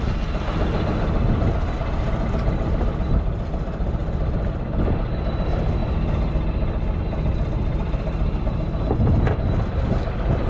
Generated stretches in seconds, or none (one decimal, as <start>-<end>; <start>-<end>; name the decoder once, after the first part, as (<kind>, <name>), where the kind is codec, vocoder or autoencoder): none